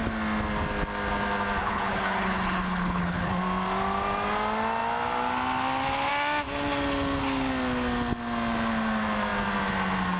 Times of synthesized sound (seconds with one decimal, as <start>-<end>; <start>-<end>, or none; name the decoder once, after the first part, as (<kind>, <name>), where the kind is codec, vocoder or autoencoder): 1.6-3.3 (codec, HILCodec)